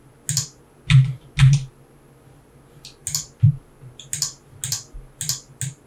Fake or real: real